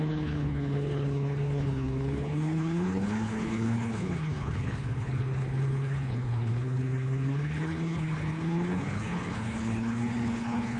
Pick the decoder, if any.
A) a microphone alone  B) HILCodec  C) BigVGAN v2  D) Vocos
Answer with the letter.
B